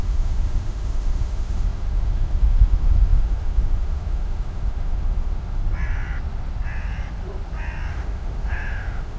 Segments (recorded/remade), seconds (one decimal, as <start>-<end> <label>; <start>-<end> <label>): 0.0-5.6 remade; 5.6-7.9 recorded; 7.9-9.2 remade